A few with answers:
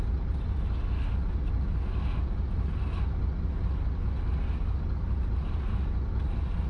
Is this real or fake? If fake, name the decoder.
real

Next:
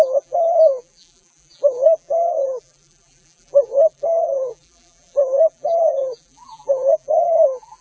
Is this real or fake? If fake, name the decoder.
fake, vocoder, BigVGAN v2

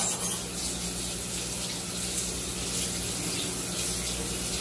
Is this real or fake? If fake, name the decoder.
real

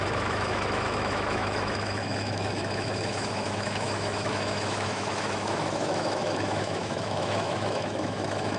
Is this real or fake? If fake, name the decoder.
fake, autoencoder, DAC-VAE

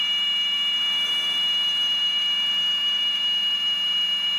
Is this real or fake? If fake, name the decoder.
fake, vocoder, BigVGAN v2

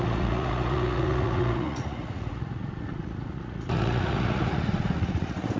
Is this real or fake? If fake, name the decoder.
fake, vocoder, Vocos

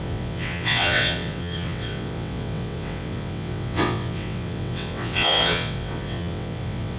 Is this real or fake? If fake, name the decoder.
fake, vocoder, WaveNeXt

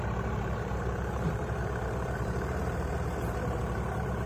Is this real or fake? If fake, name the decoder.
fake, vocoder, BigVGAN v2